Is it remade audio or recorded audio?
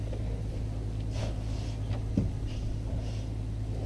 recorded